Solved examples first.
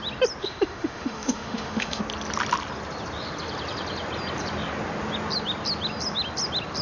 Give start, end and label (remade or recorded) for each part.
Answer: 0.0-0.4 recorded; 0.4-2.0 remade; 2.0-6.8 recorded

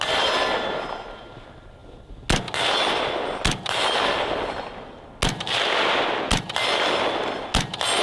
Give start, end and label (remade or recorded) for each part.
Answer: 0.0-8.0 recorded

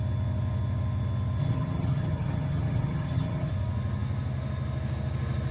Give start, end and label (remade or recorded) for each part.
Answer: 0.0-1.4 recorded; 1.4-3.5 remade; 3.5-5.5 recorded

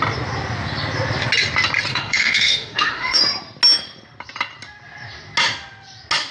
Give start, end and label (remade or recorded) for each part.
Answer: 0.0-1.9 recorded; 1.9-3.2 remade; 3.2-6.3 recorded

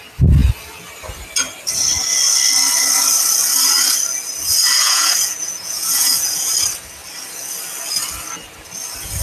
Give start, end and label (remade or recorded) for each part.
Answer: 0.0-4.8 recorded; 4.8-6.5 remade; 6.5-9.2 recorded

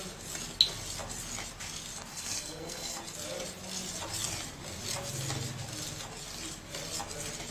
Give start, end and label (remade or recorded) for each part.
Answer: 0.0-2.1 recorded; 2.1-3.0 remade; 3.0-7.5 recorded

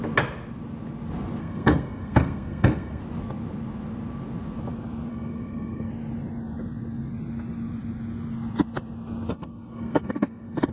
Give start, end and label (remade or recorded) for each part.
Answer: 0.0-1.4 recorded; 1.4-3.0 remade; 3.0-5.1 recorded; 5.1-5.9 remade; 5.9-9.3 recorded; 9.3-10.7 remade